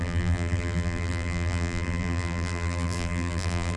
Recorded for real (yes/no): no